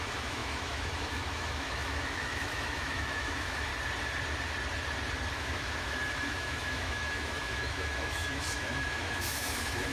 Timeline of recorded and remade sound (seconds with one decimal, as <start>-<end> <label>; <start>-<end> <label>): 0.0-3.7 remade; 3.7-5.3 recorded; 5.3-9.9 remade